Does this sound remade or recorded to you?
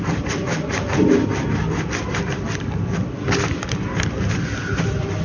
recorded